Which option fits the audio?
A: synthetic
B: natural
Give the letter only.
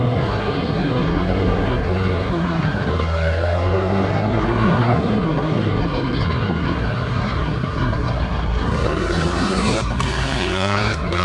A